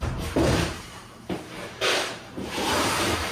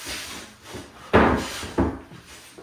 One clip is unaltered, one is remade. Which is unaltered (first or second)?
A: second